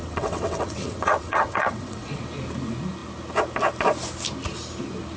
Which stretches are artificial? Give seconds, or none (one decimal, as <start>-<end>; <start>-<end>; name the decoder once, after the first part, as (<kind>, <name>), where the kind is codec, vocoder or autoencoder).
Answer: 0.0-2.2 (vocoder, WaveNeXt)